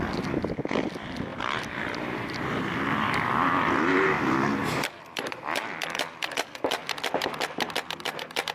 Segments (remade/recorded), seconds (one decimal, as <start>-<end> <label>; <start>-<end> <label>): 0.0-6.8 remade; 6.8-7.9 recorded; 7.9-8.5 remade